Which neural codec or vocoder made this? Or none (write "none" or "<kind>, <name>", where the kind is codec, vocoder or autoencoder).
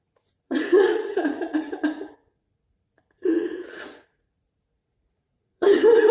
vocoder, Vocos